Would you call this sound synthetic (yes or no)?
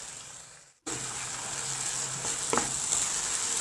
no